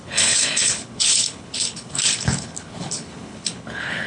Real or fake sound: fake